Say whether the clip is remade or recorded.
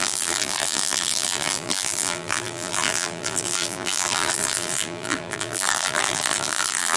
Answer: remade